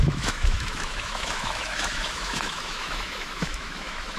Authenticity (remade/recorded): remade